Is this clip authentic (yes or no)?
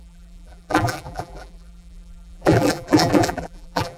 no